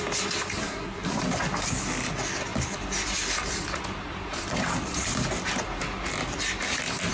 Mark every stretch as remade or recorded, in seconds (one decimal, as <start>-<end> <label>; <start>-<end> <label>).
0.0-0.6 recorded; 0.6-1.2 remade; 1.2-7.1 recorded